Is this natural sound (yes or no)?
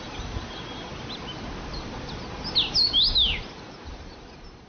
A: yes